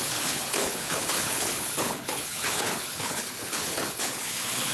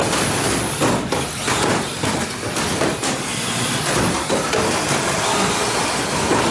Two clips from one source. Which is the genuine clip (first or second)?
second